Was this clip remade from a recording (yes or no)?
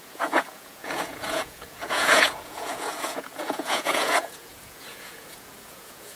yes